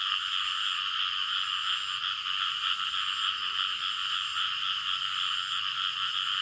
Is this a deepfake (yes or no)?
no